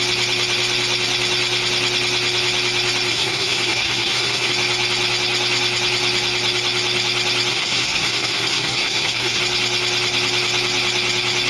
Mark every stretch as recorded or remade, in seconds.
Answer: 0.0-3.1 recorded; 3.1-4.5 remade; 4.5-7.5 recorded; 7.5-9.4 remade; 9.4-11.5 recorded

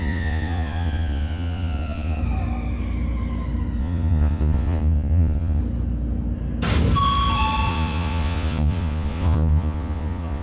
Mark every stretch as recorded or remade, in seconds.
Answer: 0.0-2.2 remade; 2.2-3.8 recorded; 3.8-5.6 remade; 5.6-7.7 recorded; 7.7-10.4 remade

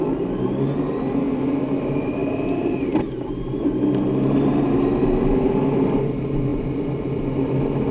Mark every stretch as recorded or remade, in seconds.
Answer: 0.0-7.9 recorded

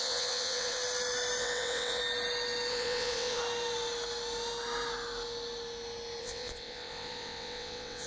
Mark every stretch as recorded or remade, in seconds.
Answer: 0.0-0.8 remade; 0.8-1.4 recorded; 1.4-2.0 remade; 2.0-2.7 recorded; 2.7-3.4 remade; 3.4-6.2 recorded; 6.2-8.1 remade

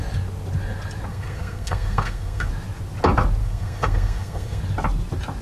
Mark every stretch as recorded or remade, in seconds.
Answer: 0.0-1.1 recorded; 1.1-2.5 remade; 2.5-3.4 recorded; 3.4-4.6 remade; 4.6-5.4 recorded

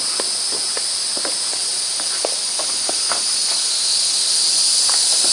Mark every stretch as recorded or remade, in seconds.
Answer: 0.0-5.3 recorded